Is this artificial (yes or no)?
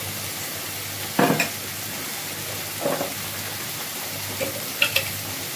no